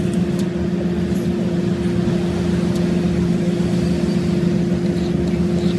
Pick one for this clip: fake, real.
real